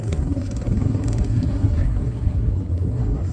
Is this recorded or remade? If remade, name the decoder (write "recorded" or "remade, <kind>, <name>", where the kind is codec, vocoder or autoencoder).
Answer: remade, codec, SNAC